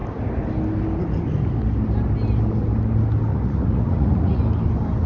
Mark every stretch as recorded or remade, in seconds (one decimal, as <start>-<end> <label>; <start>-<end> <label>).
0.0-3.3 recorded; 3.3-4.4 remade; 4.4-5.1 recorded